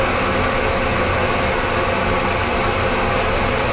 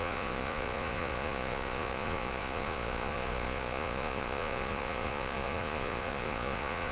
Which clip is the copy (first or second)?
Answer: second